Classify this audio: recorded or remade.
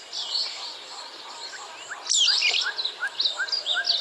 recorded